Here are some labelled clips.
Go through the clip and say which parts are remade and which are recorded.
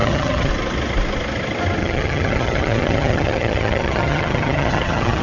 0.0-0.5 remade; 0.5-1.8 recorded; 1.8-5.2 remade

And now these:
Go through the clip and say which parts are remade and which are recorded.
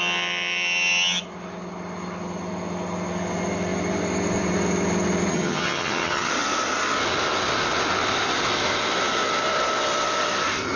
0.0-5.3 recorded; 5.3-6.3 remade; 6.3-10.8 recorded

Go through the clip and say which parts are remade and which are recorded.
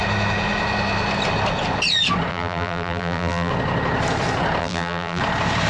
0.0-2.3 recorded; 2.3-3.5 remade; 3.5-4.6 recorded; 4.6-5.2 remade; 5.2-5.7 recorded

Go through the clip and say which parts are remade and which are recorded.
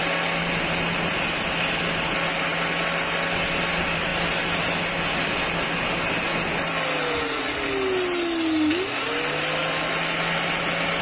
0.0-11.0 recorded